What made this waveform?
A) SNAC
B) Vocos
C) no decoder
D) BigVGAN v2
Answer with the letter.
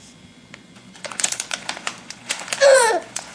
B